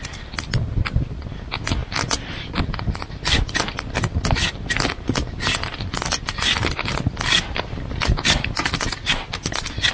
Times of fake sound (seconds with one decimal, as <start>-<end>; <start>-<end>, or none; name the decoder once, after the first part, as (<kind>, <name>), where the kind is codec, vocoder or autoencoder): none